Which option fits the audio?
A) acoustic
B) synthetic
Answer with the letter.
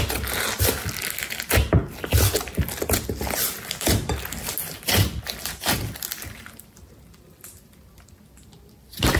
A